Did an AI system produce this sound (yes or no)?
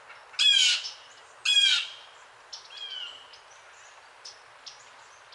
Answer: no